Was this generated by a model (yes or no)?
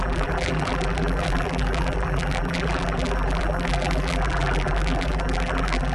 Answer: yes